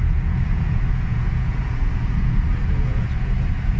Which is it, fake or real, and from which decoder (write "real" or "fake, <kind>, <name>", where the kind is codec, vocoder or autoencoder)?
fake, vocoder, Vocos